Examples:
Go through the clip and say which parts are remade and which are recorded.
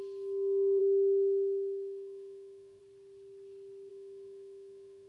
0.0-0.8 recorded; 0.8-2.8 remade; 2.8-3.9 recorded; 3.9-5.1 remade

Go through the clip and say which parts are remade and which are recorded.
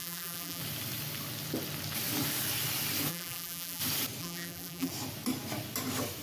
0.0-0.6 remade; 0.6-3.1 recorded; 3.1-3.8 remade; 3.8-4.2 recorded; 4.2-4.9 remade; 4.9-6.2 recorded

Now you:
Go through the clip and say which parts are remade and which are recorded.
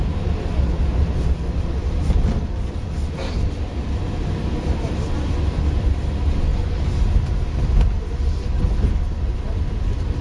0.0-10.2 recorded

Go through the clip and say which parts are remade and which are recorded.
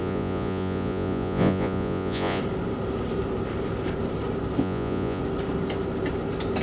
0.0-2.4 remade; 2.4-4.6 recorded; 4.6-5.2 remade; 5.2-6.6 recorded